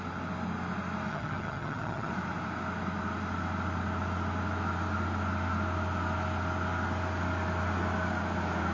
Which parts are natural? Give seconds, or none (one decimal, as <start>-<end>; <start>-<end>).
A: 0.0-1.1; 2.1-8.7